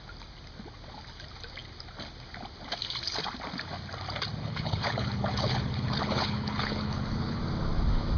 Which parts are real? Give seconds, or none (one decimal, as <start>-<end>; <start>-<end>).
0.0-4.4; 7.4-8.2